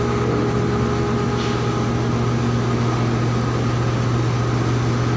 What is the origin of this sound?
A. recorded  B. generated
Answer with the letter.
A